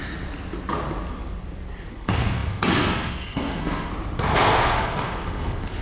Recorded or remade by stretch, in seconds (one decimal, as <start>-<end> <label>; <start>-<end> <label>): 0.0-1.9 recorded; 1.9-3.9 remade; 3.9-4.4 recorded; 4.4-5.8 remade